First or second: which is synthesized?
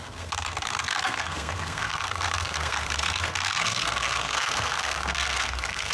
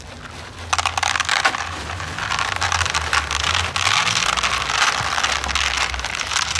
first